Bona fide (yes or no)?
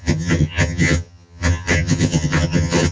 no